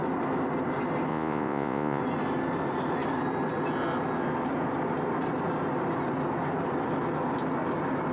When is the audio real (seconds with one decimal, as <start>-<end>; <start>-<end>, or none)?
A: 0.0-1.1; 2.0-8.1